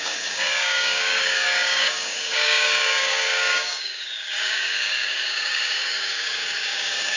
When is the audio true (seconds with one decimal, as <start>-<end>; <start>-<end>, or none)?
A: none